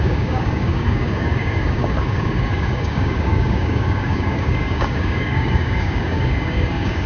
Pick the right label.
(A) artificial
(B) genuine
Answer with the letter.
A